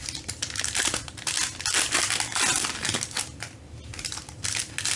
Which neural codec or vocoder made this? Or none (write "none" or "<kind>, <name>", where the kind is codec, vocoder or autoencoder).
none